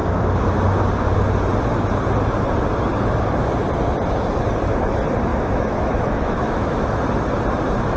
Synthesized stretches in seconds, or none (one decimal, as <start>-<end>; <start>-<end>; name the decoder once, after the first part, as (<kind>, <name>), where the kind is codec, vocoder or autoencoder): 5.3-7.0 (autoencoder, DAC-VAE)